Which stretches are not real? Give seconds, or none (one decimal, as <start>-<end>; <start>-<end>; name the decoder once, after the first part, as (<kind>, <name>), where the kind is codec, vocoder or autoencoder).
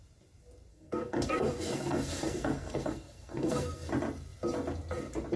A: 0.7-3.9 (codec, SNAC)